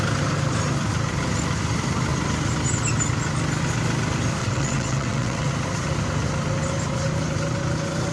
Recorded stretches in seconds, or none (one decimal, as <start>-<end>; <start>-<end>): 0.0-4.4; 5.5-8.1